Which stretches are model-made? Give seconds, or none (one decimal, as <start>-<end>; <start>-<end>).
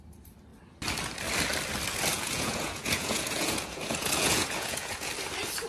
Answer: 2.1-5.1